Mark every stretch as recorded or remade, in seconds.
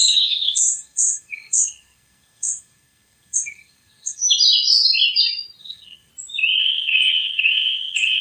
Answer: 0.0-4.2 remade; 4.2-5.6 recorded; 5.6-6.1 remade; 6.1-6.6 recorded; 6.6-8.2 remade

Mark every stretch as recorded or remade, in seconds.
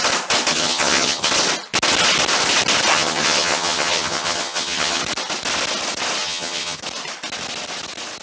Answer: 0.0-0.5 recorded; 0.5-1.3 remade; 1.3-2.9 recorded; 2.9-5.0 remade; 5.0-6.2 recorded; 6.2-6.8 remade; 6.8-8.2 recorded